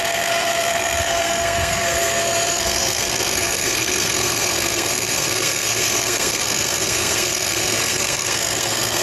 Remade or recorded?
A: remade